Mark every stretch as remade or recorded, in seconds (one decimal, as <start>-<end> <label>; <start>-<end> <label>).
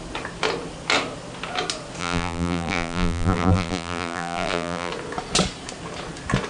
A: 0.0-2.0 recorded; 2.0-4.9 remade; 4.9-6.5 recorded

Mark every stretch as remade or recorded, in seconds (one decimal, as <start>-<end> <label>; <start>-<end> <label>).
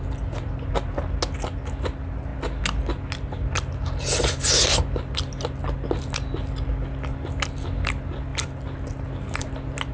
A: 0.0-9.9 recorded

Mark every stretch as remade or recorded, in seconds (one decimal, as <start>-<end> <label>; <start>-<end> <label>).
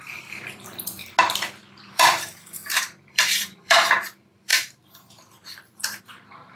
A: 0.0-1.0 remade; 1.0-1.8 recorded; 1.8-2.6 remade; 2.6-3.1 recorded; 3.1-6.5 remade